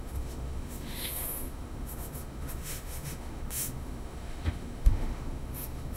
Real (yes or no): no